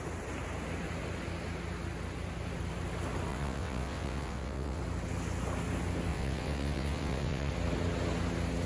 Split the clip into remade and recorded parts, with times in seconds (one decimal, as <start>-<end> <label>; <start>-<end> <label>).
0.0-3.3 recorded; 3.3-4.8 remade; 4.8-6.1 recorded; 6.1-7.5 remade; 7.5-8.7 recorded